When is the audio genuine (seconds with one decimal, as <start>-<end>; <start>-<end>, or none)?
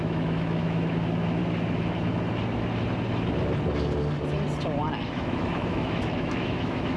1.4-5.1